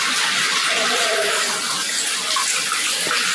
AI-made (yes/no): no